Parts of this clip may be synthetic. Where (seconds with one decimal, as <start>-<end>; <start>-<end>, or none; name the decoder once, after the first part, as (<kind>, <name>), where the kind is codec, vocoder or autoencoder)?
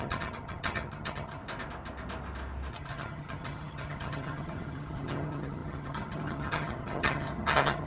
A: 0.0-1.4 (vocoder, HiFi-GAN); 2.7-7.9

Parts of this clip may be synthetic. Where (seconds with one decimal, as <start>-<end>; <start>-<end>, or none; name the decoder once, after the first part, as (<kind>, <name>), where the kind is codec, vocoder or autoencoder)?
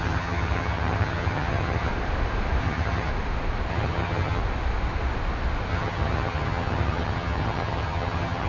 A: 0.0-1.9 (vocoder, HiFi-GAN); 2.6-3.1; 3.7-4.4; 5.7-8.5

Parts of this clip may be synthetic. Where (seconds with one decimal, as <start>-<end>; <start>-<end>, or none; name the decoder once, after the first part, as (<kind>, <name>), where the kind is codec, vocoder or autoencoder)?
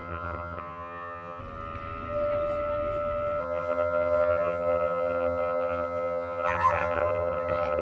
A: 0.0-1.4 (vocoder, HiFi-GAN); 3.4-7.8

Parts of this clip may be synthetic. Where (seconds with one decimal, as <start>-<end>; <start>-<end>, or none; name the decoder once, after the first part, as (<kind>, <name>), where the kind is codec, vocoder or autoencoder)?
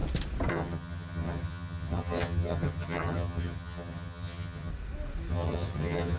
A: 0.5-4.7 (vocoder, HiFi-GAN); 5.3-6.2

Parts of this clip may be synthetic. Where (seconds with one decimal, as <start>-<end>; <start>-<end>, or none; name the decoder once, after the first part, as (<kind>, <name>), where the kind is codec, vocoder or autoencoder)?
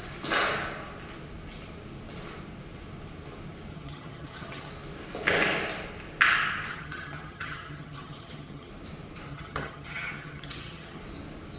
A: 3.7-4.7 (vocoder, HiFi-GAN); 6.7-8.7; 9.3-11.0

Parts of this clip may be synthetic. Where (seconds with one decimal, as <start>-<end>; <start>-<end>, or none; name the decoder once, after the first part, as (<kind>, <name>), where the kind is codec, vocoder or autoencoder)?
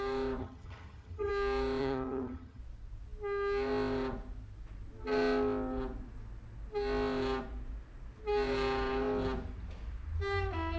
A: 0.4-1.3 (vocoder, HiFi-GAN); 1.8-2.6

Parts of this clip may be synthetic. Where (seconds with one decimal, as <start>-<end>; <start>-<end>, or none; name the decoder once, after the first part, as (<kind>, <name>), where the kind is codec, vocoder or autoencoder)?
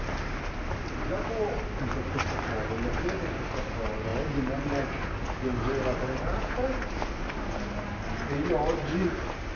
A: none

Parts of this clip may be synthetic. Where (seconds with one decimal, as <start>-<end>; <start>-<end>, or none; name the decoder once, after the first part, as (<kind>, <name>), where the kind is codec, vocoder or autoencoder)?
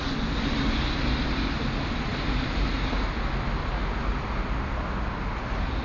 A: none